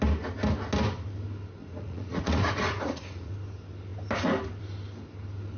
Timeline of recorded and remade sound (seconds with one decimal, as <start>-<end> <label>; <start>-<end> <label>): 0.0-1.6 recorded; 1.6-3.3 remade; 3.3-5.6 recorded